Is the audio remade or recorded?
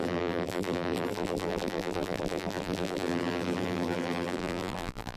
remade